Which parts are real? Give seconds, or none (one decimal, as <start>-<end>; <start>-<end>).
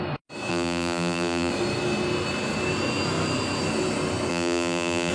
0.0-0.5; 1.5-4.3